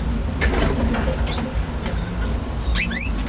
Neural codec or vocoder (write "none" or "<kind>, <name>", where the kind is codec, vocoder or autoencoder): none